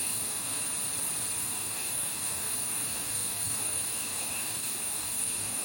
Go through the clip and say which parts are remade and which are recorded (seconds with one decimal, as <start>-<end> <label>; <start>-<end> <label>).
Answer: 0.0-0.6 remade; 0.6-1.4 recorded; 1.4-5.6 remade